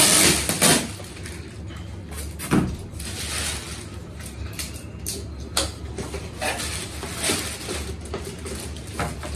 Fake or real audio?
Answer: real